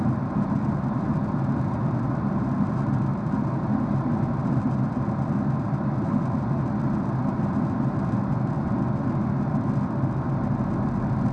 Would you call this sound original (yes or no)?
yes